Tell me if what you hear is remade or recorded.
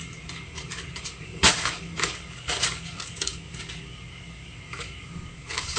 remade